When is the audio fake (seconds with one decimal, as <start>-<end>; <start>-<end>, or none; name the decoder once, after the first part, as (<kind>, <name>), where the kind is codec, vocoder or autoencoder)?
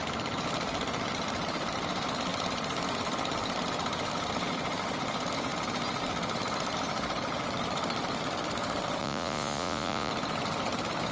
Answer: 9.0-10.1 (vocoder, Vocos)